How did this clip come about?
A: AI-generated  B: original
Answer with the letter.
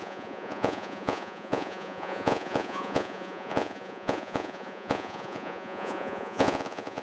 A